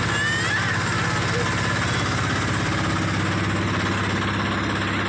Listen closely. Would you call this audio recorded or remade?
recorded